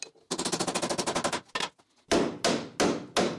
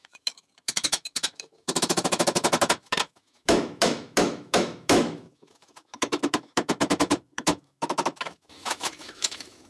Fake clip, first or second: second